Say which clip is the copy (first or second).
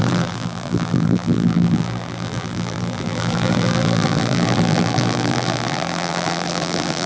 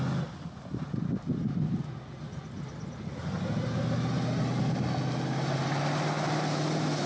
first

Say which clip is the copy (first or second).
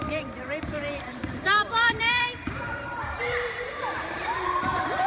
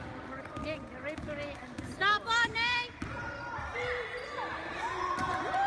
first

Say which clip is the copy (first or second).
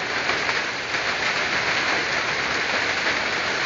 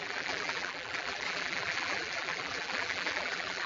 second